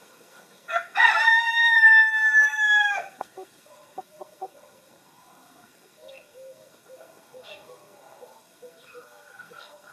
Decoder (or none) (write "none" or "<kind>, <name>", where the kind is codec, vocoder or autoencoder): codec, SNAC